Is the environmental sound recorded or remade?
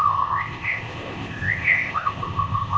remade